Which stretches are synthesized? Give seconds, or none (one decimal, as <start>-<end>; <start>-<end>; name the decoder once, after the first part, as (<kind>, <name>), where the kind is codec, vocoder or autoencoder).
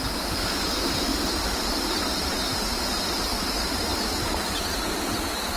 none